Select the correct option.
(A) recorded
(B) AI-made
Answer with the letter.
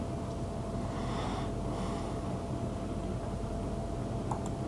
A